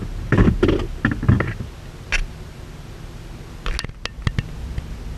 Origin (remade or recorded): recorded